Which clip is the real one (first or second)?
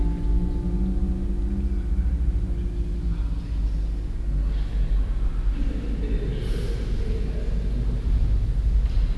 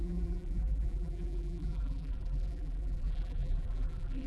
first